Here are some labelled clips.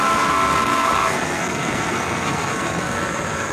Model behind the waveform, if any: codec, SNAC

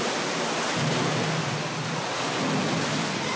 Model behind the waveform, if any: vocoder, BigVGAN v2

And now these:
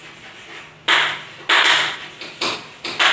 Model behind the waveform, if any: none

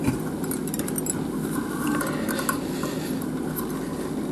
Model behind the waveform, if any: none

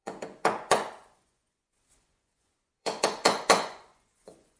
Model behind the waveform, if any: vocoder, Vocos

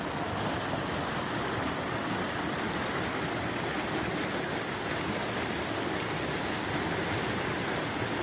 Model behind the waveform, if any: none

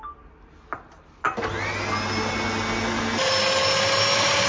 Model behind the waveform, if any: none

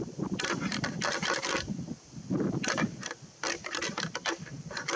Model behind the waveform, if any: none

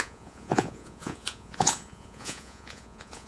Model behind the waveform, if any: vocoder, Vocos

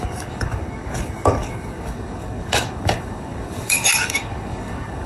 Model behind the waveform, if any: codec, DAC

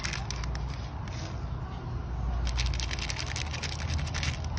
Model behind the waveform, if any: none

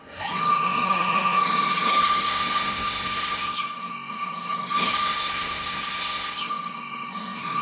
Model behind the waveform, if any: codec, SNAC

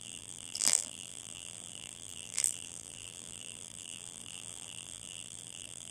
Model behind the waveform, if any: vocoder, BigVGAN v2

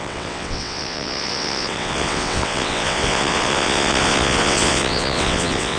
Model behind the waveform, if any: vocoder, WaveNeXt